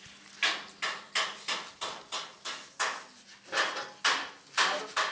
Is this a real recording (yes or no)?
yes